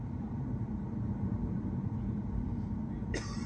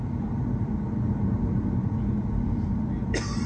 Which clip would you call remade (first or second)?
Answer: first